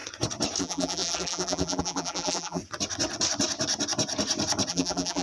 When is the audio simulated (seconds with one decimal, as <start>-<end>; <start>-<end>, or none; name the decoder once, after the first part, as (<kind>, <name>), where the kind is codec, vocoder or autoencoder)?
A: 0.6-2.6 (vocoder, BigVGAN v2); 4.7-5.2